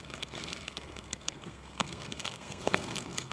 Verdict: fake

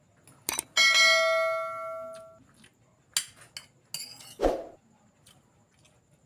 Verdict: real